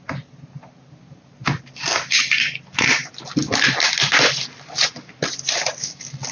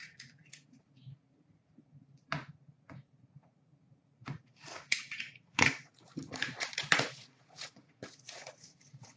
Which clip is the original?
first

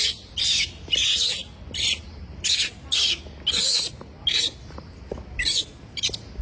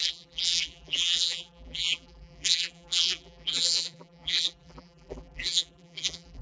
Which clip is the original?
first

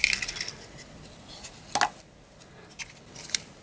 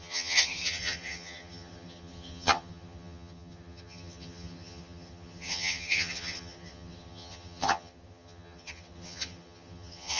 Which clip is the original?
first